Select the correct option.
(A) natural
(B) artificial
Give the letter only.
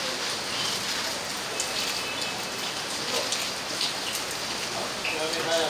A